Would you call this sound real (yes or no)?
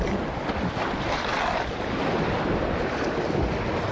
yes